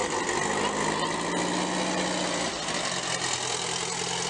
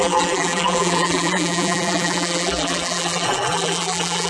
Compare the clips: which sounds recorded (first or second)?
first